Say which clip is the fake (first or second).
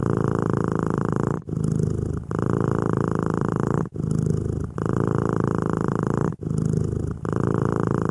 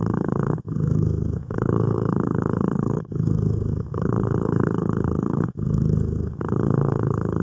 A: second